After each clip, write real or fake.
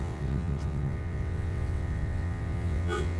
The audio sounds fake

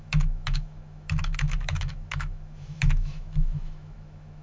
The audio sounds fake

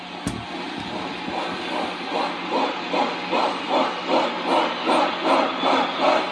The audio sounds real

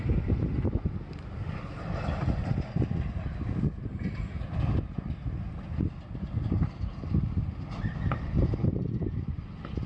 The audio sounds real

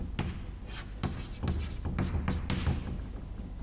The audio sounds real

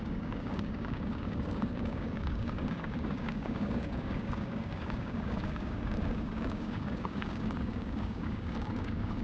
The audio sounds fake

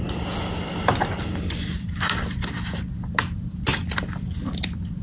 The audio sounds real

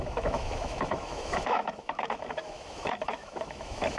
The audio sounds fake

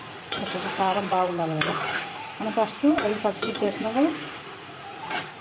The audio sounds fake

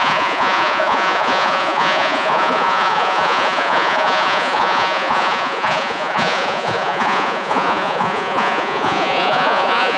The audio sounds fake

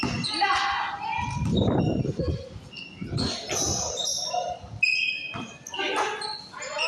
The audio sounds real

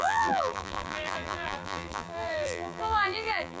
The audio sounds fake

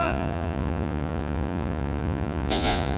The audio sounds fake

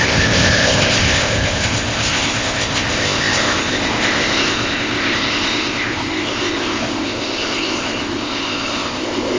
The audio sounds fake